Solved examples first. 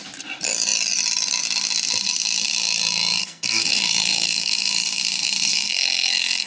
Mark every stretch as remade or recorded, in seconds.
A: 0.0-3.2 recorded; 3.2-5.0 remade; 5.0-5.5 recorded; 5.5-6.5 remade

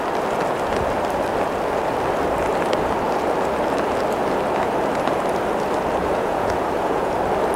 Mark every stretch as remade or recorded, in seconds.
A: 0.0-6.0 recorded; 6.0-7.1 remade; 7.1-7.6 recorded

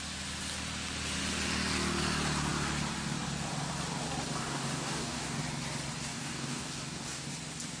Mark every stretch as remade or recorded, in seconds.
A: 0.0-4.4 recorded; 4.4-5.4 remade; 5.4-6.1 recorded; 6.1-7.3 remade; 7.3-7.8 recorded

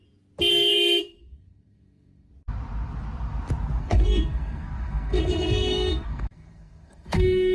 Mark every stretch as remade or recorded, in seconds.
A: 0.0-0.5 recorded; 0.5-2.3 remade; 2.3-3.8 recorded; 3.8-7.5 remade